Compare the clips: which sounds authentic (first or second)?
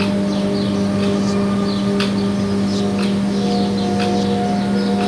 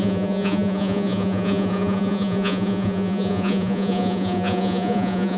first